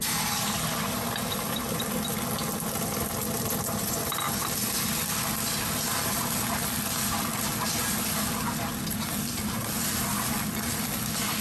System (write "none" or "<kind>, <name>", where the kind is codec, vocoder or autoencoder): none